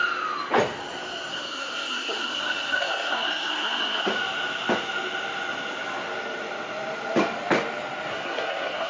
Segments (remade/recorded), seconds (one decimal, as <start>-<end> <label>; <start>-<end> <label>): 0.0-1.3 recorded; 1.3-4.1 remade; 4.1-8.1 recorded; 8.1-8.9 remade

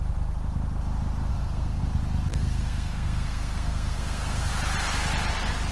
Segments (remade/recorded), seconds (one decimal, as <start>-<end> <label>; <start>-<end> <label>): 0.0-1.3 recorded; 1.3-1.8 remade; 1.8-2.3 recorded; 2.3-4.5 remade; 4.5-5.7 recorded

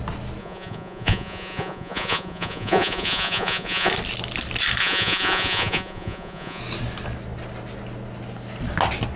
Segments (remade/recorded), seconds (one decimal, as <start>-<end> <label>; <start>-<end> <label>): 0.0-0.4 recorded; 0.4-3.9 remade; 3.9-4.8 recorded; 4.8-6.6 remade; 6.6-9.2 recorded

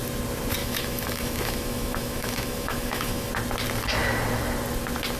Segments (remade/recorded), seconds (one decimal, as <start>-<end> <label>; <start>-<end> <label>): 0.0-0.6 recorded; 0.6-3.3 remade; 3.3-5.2 recorded

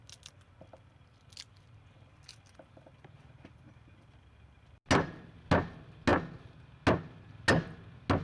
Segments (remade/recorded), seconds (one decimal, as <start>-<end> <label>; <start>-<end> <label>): 0.0-8.2 recorded

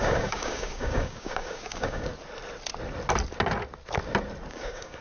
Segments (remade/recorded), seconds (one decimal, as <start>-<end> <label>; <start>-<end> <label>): 0.0-2.1 remade; 2.1-4.5 recorded; 4.5-5.0 remade

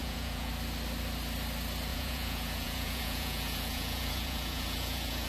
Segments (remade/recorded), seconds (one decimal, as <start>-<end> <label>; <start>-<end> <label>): 0.0-0.5 remade; 0.5-1.9 recorded; 1.9-5.3 remade